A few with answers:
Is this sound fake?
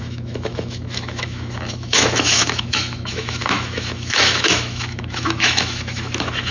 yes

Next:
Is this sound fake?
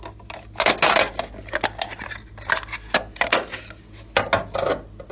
no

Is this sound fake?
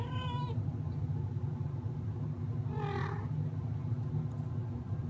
no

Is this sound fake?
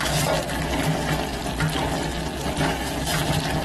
no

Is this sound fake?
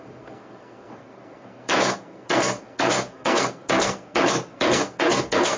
yes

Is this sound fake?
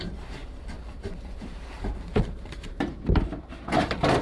yes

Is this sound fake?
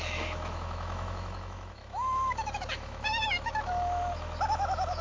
yes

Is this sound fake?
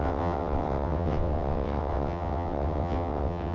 yes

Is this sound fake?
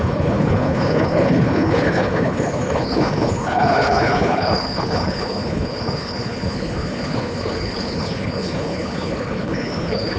yes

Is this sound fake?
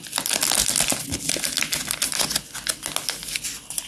no